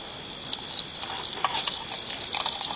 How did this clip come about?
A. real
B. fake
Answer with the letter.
A